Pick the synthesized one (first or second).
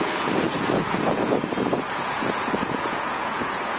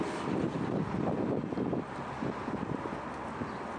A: first